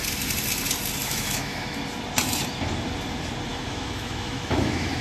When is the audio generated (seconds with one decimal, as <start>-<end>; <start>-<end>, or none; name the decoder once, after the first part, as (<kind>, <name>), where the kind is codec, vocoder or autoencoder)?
1.0-1.8 (autoencoder, DAC-VAE); 3.5-5.0